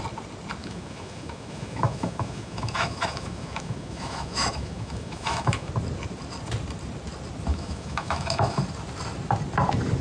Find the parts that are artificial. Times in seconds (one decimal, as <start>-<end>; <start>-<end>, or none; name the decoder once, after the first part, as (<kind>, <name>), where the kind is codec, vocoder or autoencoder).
0.6-5.7 (autoencoder, DAC-VAE); 7.5-8.6